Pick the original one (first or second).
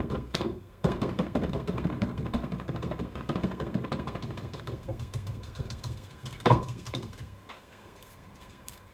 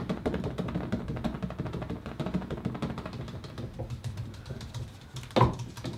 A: second